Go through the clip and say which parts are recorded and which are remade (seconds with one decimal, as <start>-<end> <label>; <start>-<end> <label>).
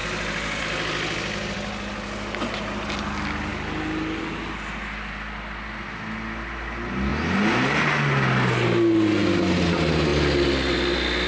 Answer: 0.0-11.3 recorded